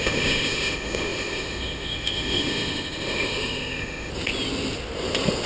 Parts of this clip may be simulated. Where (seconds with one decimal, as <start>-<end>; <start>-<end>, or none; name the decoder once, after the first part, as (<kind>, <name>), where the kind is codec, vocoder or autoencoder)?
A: 0.0-4.1 (autoencoder, DAC-VAE)